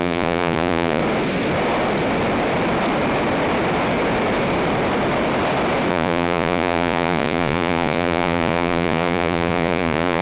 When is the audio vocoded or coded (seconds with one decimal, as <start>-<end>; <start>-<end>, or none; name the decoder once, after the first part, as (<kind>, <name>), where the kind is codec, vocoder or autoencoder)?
0.0-1.0 (vocoder, Vocos); 5.9-10.2